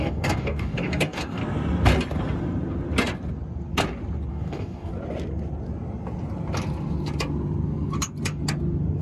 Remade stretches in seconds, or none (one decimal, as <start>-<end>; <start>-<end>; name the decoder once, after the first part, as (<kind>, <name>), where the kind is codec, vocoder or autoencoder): 0.0-1.4 (codec, DAC); 4.3-4.9